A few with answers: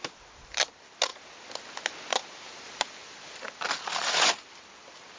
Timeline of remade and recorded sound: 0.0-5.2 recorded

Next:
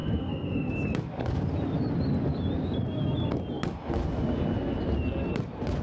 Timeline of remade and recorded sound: 0.0-0.7 remade; 0.7-5.8 recorded

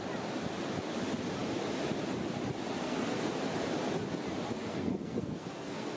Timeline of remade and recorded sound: 0.0-2.8 recorded; 2.8-3.3 remade; 3.3-4.5 recorded; 4.5-6.0 remade

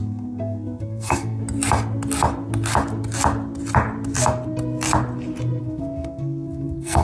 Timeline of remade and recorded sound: 0.0-1.4 remade; 1.4-5.6 recorded; 5.6-7.0 remade

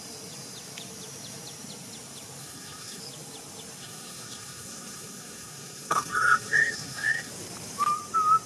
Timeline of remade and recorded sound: 0.0-2.4 recorded; 2.4-3.0 remade; 3.0-3.8 recorded; 3.8-7.3 remade; 7.3-8.5 recorded